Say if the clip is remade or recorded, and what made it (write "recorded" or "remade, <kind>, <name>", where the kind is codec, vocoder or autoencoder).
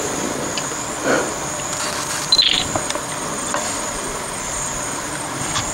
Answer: remade, vocoder, BigVGAN v2